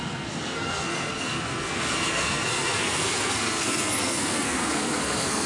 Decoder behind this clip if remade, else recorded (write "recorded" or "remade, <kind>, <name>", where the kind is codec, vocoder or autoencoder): remade, codec, SNAC